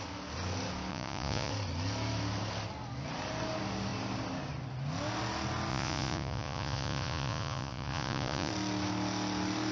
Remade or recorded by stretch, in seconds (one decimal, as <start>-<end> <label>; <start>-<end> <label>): 0.0-0.9 recorded; 0.9-1.5 remade; 1.5-5.7 recorded; 5.7-8.5 remade; 8.5-9.7 recorded